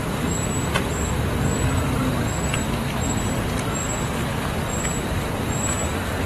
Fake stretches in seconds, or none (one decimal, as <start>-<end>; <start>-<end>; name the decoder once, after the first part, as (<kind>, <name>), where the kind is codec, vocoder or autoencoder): 4.3-4.8 (vocoder, BigVGAN v2)